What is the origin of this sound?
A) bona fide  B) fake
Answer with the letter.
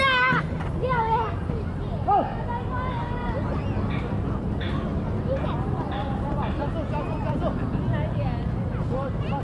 A